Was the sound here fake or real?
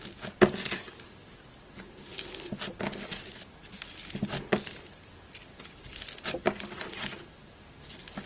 real